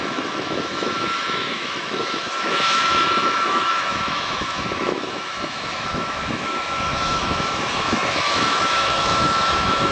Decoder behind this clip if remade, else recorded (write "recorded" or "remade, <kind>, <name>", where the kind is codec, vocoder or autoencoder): remade, autoencoder, DAC-VAE